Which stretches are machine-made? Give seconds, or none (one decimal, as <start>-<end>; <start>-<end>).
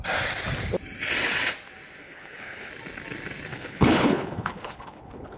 2.0-2.7; 3.5-5.4